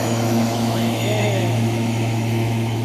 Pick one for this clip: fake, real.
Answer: fake